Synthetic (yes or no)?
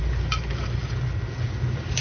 no